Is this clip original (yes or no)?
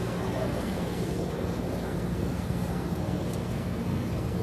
no